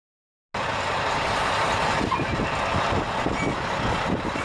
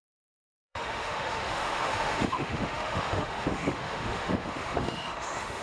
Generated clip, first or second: second